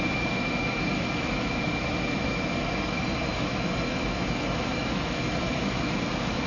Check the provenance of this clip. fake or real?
fake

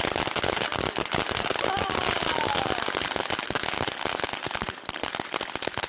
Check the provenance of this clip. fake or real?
real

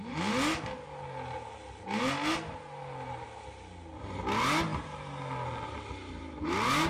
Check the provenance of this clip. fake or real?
real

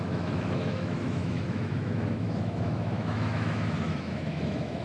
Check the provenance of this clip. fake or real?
fake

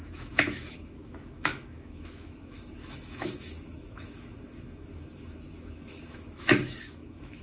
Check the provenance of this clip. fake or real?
fake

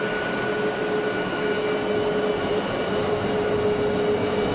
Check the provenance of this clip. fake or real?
real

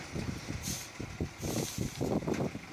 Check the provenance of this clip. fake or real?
real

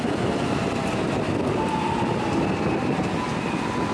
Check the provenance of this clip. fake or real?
real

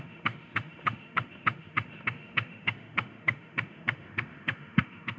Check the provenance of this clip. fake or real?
fake